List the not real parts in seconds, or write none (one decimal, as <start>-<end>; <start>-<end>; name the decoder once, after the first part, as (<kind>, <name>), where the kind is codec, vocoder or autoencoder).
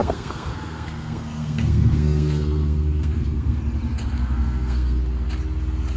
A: 0.0-3.6 (codec, SNAC); 4.2-5.0